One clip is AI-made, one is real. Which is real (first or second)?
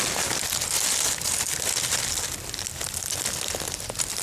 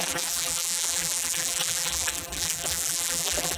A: first